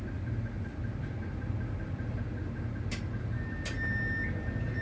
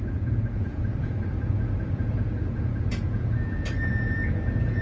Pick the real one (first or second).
first